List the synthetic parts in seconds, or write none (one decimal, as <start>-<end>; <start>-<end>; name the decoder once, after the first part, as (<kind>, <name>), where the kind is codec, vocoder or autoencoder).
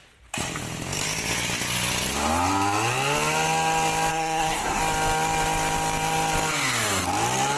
4.1-4.8 (codec, SNAC)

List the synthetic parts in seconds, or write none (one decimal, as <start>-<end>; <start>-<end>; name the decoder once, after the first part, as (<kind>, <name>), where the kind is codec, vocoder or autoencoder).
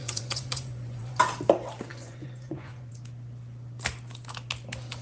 0.0-1.2 (vocoder, Vocos); 1.9-2.9